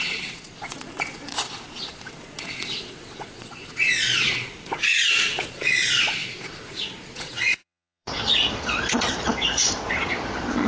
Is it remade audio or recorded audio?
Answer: remade